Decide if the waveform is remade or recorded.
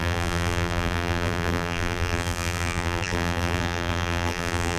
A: remade